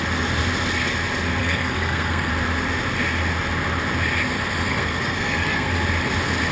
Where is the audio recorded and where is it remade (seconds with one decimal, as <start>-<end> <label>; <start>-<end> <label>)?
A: 0.0-1.4 recorded; 1.4-2.3 remade; 2.3-4.7 recorded; 4.7-5.7 remade; 5.7-6.5 recorded